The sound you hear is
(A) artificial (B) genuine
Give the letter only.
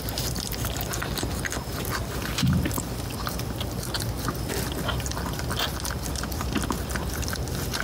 B